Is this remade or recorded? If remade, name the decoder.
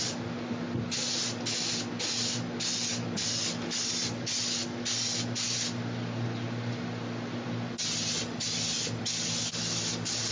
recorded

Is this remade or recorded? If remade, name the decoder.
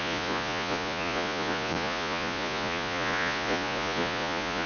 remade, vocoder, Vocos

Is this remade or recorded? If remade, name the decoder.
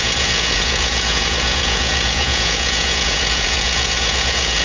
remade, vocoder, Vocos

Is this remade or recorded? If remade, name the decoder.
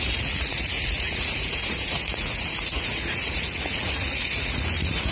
remade, vocoder, Vocos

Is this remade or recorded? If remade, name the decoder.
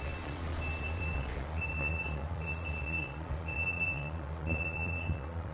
remade, vocoder, Vocos